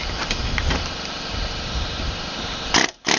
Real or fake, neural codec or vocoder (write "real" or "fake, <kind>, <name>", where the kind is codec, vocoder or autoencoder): real